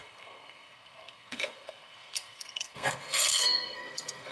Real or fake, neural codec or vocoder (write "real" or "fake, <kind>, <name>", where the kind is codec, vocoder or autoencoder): fake, codec, SNAC